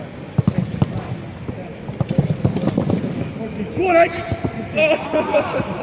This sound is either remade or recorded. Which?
recorded